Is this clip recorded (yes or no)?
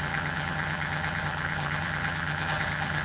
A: no